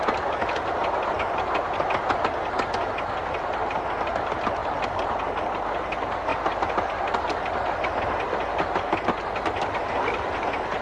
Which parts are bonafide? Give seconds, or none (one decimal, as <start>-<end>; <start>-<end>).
0.0-10.8